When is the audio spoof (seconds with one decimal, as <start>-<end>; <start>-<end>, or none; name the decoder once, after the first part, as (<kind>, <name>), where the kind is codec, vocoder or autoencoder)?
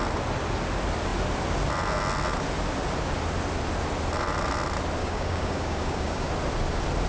5.0-6.3 (codec, DAC)